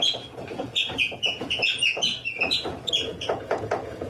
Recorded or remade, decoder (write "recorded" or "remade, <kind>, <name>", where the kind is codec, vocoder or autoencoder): remade, vocoder, Vocos